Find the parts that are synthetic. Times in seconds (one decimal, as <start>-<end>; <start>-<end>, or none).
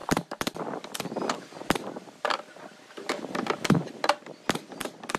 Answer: none